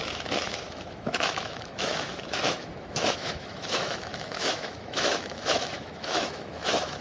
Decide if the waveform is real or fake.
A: fake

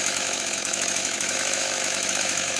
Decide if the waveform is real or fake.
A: fake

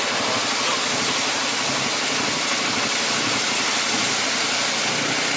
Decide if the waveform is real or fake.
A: real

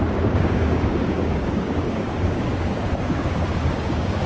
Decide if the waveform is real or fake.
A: fake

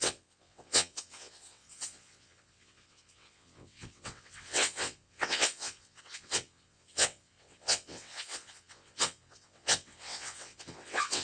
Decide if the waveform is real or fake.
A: fake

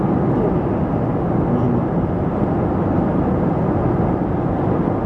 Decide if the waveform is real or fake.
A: real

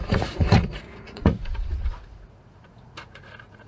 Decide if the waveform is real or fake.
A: fake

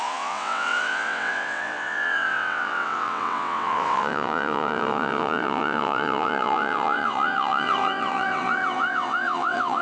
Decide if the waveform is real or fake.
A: fake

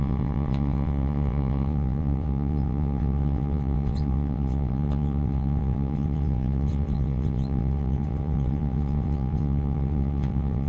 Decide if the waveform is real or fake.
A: fake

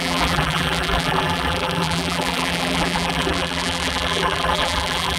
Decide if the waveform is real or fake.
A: fake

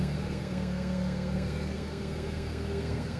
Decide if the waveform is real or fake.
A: fake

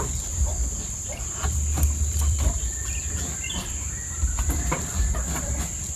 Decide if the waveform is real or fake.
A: fake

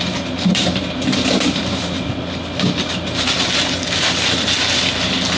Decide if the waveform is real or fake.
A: real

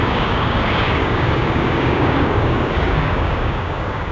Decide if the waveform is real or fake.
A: fake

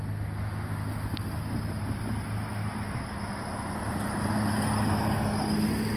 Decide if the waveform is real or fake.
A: real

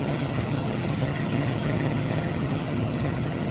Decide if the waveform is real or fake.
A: fake